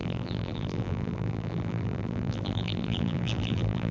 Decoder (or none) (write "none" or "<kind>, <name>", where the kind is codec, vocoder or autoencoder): vocoder, BigVGAN v2